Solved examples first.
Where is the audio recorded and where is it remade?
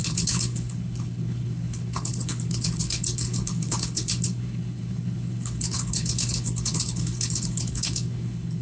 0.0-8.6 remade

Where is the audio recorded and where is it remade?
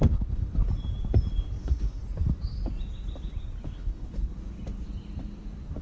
0.0-0.6 remade; 0.6-1.6 recorded; 1.6-2.0 remade; 2.0-3.6 recorded; 3.6-4.3 remade; 4.3-5.8 recorded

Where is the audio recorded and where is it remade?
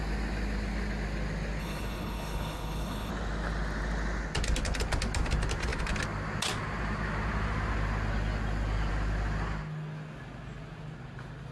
0.0-1.6 recorded; 1.6-3.1 remade; 3.1-11.5 recorded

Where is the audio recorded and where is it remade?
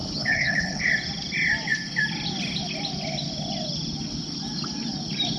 0.0-0.9 remade; 0.9-5.4 recorded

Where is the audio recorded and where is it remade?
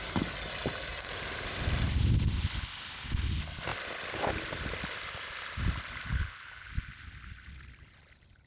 0.0-6.1 recorded; 6.1-6.7 remade; 6.7-8.5 recorded